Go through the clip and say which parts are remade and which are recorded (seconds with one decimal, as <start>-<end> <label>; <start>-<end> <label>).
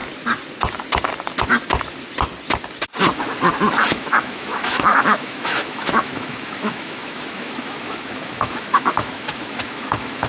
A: 0.0-3.9 recorded; 3.9-10.3 remade